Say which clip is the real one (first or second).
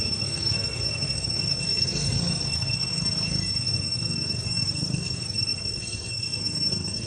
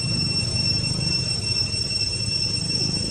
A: second